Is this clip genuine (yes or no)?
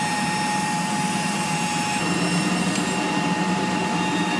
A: no